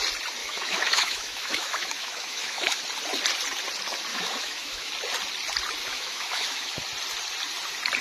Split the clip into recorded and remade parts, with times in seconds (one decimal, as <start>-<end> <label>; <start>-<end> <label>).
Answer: 0.0-0.4 recorded; 0.4-2.8 remade; 2.8-4.1 recorded; 4.1-4.9 remade; 4.9-5.8 recorded; 5.8-6.8 remade; 6.8-8.0 recorded